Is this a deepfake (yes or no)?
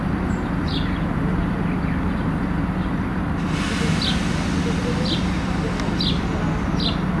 no